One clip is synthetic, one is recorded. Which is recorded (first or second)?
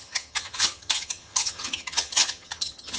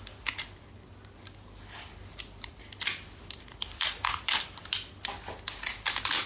second